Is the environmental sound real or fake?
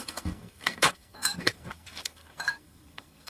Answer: fake